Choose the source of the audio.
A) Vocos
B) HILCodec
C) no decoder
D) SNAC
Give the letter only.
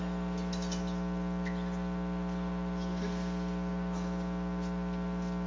C